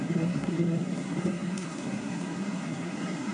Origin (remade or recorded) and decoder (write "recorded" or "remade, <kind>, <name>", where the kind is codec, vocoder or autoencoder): remade, codec, SNAC